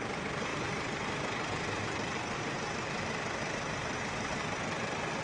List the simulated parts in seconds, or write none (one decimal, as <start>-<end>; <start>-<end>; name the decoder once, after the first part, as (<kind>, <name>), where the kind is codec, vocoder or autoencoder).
0.0-0.5 (vocoder, BigVGAN v2); 1.5-5.2